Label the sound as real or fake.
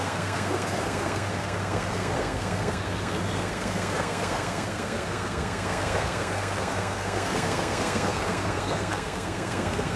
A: fake